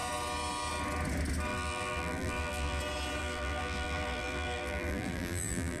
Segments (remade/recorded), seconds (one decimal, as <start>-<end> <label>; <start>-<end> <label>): 0.0-1.5 recorded; 1.5-2.8 remade; 2.8-3.2 recorded; 3.2-5.8 remade